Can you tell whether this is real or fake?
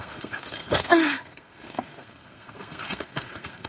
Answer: fake